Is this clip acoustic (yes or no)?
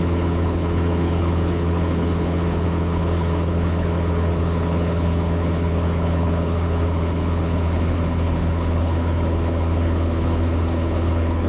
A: no